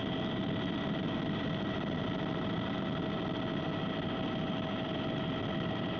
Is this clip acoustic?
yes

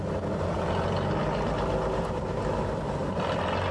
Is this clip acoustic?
yes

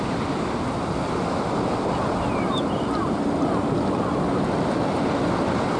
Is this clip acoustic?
yes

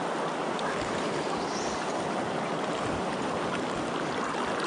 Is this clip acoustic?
yes